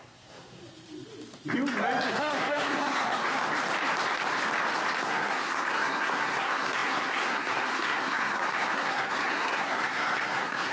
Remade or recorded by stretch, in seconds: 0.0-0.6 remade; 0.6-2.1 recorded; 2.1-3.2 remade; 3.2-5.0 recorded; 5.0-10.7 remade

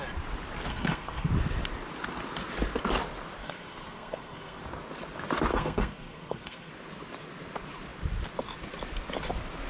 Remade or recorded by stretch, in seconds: 0.0-0.7 recorded; 0.7-1.3 remade; 1.3-3.4 recorded; 3.4-4.6 remade; 4.6-5.5 recorded; 5.5-6.7 remade; 6.7-9.7 recorded

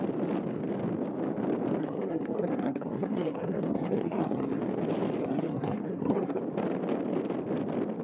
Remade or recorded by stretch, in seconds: 0.0-1.8 recorded; 1.8-4.6 remade; 4.6-5.2 recorded; 5.2-6.4 remade; 6.4-8.0 recorded

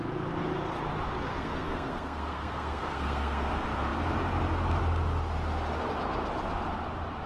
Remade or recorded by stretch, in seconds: 0.0-1.3 recorded; 1.3-3.5 remade; 3.5-7.3 recorded

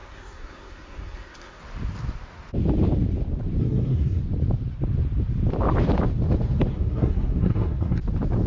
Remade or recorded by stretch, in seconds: 0.0-1.6 remade; 1.6-3.6 recorded; 3.6-4.2 remade; 4.2-6.7 recorded; 6.7-8.0 remade; 8.0-8.5 recorded

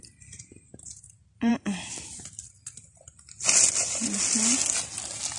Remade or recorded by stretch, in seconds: 0.0-5.4 recorded